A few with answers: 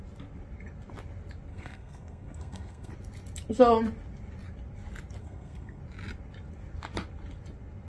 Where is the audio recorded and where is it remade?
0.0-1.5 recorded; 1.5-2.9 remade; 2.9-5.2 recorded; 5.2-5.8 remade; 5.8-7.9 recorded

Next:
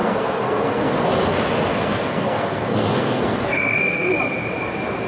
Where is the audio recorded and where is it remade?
0.0-0.9 remade; 0.9-1.7 recorded; 1.7-4.1 remade; 4.1-5.1 recorded

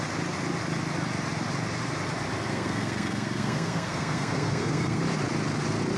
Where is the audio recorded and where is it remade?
0.0-2.5 recorded; 2.5-5.0 remade; 5.0-6.0 recorded

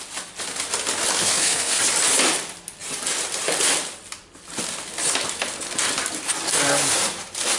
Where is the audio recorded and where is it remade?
0.0-1.2 recorded; 1.2-1.8 remade; 1.8-7.6 recorded

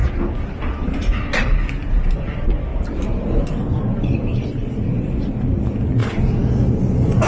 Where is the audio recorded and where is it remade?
0.0-7.3 recorded